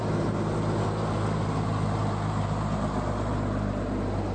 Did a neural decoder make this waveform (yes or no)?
no